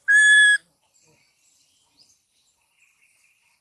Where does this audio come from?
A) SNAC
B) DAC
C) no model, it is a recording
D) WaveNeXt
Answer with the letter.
C